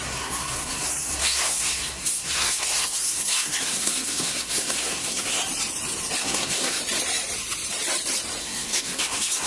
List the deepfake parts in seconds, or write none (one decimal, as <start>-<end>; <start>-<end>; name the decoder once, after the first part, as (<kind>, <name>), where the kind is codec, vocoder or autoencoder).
0.0-5.4 (codec, SNAC); 6.2-6.8; 8.4-9.5